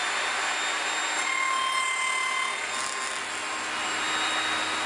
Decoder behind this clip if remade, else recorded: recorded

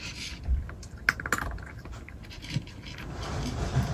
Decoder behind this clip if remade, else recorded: recorded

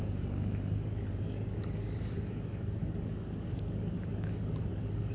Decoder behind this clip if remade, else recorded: remade, codec, DAC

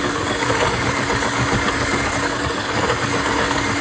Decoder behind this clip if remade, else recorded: remade, codec, DAC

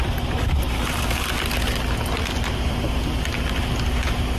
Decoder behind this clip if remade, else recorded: recorded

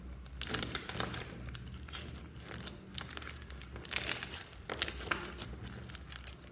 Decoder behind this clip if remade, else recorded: recorded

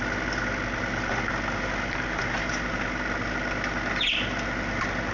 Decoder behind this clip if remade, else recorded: recorded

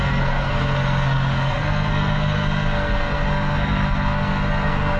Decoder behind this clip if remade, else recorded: remade, codec, SNAC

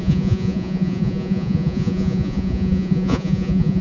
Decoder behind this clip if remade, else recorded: remade, vocoder, Vocos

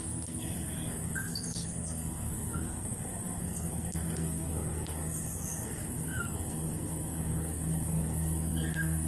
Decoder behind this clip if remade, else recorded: remade, codec, SNAC